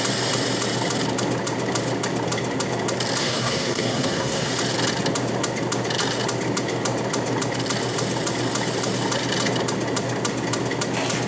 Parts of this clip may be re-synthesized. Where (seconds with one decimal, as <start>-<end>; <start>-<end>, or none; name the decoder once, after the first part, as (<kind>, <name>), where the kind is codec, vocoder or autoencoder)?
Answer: 3.2-4.5 (codec, SNAC)